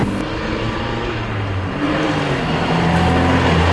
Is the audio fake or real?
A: real